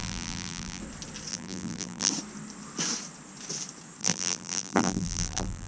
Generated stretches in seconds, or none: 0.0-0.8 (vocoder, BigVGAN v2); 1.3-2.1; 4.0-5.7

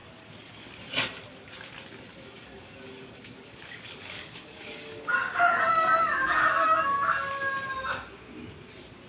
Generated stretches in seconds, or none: 0.0-0.9 (codec, DAC); 2.1-7.3

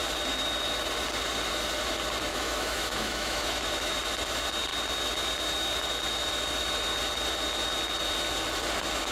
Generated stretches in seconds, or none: 2.3-3.9 (autoencoder, DAC-VAE)

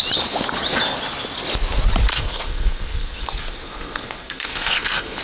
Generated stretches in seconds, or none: 2.1-5.2 (codec, SNAC)

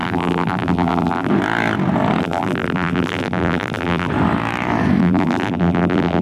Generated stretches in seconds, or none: 0.0-1.3 (vocoder, BigVGAN v2); 2.2-4.1; 5.0-6.2